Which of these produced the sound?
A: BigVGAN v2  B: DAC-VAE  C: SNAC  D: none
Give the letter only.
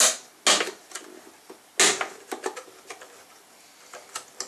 D